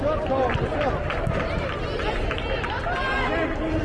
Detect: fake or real real